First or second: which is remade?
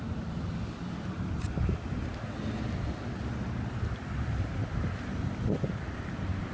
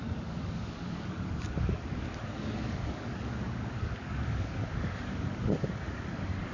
second